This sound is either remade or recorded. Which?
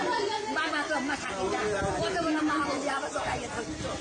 recorded